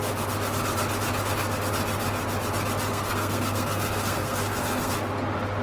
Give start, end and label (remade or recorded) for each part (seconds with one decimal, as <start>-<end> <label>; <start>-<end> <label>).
0.0-2.9 recorded; 2.9-4.9 remade; 4.9-5.6 recorded